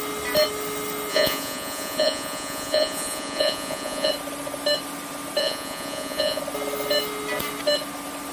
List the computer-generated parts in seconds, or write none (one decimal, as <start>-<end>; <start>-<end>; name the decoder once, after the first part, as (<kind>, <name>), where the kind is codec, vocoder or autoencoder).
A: 1.1-4.1 (vocoder, Vocos); 5.4-6.4